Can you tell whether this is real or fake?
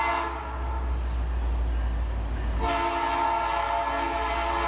real